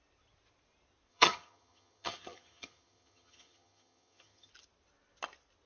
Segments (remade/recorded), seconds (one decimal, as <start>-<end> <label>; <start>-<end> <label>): 0.0-1.1 recorded; 1.1-4.5 remade; 4.5-5.7 recorded